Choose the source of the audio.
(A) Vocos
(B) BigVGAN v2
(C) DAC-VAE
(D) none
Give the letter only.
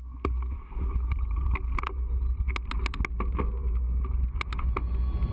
D